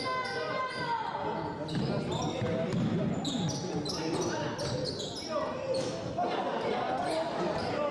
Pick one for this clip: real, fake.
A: real